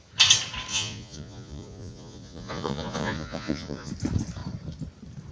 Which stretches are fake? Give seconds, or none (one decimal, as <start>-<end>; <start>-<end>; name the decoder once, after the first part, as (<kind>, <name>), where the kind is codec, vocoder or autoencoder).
0.7-3.9 (vocoder, Vocos)